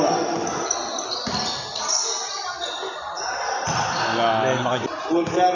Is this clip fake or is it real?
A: real